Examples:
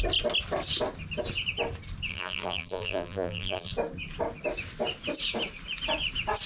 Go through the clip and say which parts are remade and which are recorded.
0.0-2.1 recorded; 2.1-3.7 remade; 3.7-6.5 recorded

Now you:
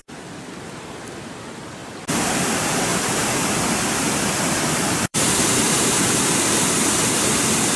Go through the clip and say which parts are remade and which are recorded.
0.0-2.9 recorded; 2.9-7.2 remade; 7.2-7.8 recorded